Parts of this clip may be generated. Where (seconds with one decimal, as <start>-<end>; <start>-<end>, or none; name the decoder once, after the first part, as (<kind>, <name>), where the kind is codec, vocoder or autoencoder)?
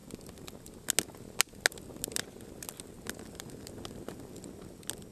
none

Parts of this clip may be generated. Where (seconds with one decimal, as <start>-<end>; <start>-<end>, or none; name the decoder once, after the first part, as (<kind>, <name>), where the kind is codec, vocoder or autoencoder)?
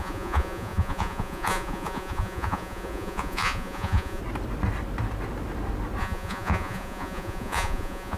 0.0-4.2 (vocoder, Vocos); 6.0-8.2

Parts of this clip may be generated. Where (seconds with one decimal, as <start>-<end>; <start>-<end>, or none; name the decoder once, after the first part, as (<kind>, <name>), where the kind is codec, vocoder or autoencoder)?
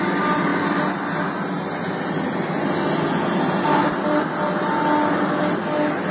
none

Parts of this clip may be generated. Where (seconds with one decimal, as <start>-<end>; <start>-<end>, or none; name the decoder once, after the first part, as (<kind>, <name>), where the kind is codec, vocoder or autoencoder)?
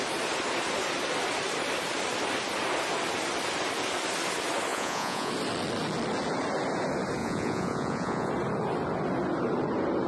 4.7-5.3 (vocoder, Vocos); 7.2-8.3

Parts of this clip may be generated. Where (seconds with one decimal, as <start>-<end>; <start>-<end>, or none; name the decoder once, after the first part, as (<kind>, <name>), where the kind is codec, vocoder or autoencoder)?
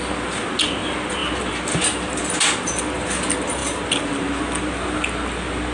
none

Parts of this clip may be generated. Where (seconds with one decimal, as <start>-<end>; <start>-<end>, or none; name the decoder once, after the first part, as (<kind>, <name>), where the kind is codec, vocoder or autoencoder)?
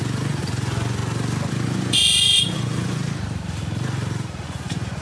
0.0-1.0 (vocoder, Vocos); 1.5-3.0; 4.4-5.0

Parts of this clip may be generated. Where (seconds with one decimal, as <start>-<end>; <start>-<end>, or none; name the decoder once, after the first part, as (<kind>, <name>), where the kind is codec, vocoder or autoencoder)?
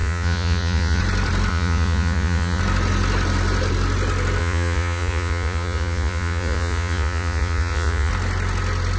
0.0-1.0 (vocoder, Vocos); 1.5-2.6; 4.4-8.1